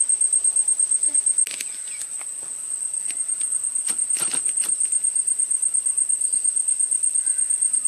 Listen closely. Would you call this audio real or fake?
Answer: real